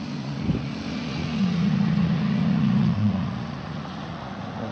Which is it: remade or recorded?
remade